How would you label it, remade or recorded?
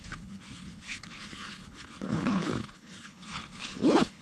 remade